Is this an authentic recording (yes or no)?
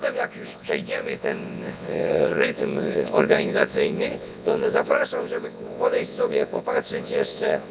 no